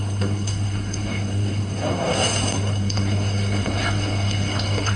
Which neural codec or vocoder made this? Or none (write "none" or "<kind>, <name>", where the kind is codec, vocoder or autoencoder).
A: codec, SNAC